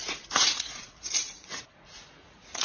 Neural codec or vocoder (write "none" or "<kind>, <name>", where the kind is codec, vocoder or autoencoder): vocoder, Vocos